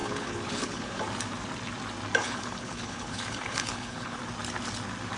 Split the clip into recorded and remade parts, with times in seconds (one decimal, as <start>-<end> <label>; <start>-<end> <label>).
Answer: 0.0-1.0 remade; 1.0-2.2 recorded; 2.2-4.2 remade; 4.2-5.2 recorded